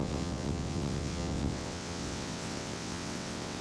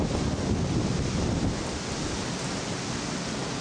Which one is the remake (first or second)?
first